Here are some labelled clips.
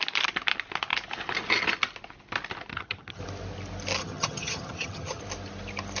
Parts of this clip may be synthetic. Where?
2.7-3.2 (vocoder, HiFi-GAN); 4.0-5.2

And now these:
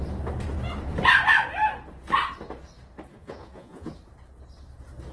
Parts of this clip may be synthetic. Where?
3.1-3.9 (vocoder, Vocos)

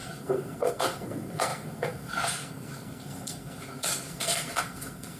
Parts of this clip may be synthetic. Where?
0.0-5.2 (codec, SNAC)